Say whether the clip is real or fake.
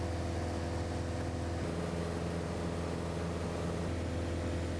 real